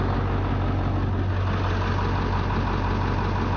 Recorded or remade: recorded